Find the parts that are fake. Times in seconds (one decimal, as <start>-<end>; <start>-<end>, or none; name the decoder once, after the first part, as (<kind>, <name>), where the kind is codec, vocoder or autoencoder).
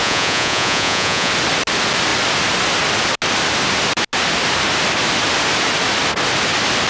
0.0-1.3 (vocoder, Vocos)